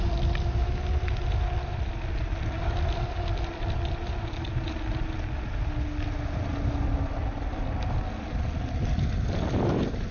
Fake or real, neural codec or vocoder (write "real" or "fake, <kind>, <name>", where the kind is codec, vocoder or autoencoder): real